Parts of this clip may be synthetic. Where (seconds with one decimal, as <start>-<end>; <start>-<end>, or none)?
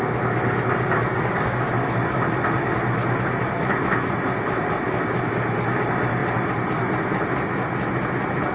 1.1-1.7